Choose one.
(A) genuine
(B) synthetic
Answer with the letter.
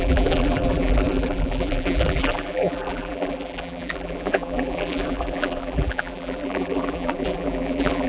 B